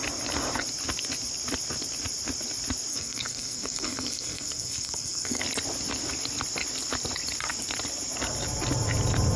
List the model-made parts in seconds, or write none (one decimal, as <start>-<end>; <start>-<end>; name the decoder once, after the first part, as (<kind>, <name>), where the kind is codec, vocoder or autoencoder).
2.9-5.4 (codec, SNAC)